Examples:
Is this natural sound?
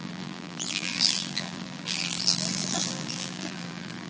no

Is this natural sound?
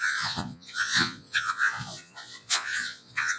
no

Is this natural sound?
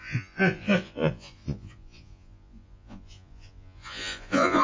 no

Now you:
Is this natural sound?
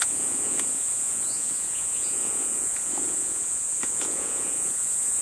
no